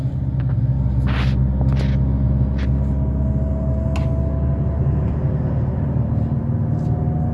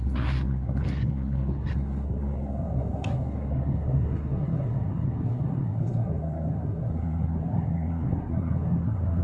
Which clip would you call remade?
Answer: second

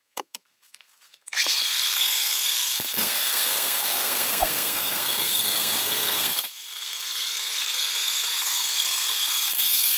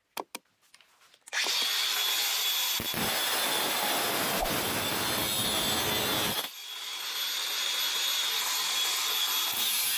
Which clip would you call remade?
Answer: first